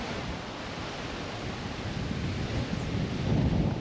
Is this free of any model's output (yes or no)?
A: yes